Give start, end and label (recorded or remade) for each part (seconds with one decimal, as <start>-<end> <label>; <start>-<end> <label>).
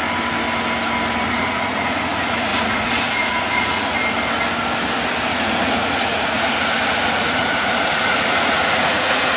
0.0-1.3 recorded; 1.3-4.0 remade; 4.0-5.3 recorded; 5.3-9.4 remade